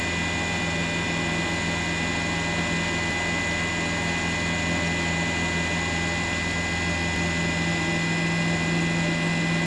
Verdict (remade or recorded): recorded